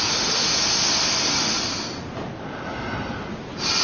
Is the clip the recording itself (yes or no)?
yes